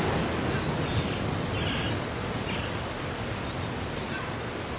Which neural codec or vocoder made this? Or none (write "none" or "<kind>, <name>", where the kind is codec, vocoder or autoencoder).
none